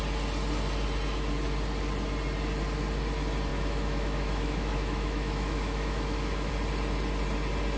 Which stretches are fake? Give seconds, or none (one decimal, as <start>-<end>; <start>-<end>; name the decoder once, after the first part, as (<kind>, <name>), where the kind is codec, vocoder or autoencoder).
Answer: 3.5-6.5 (autoencoder, DAC-VAE)